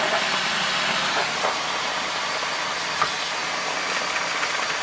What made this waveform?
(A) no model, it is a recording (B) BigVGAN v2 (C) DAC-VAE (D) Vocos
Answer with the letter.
A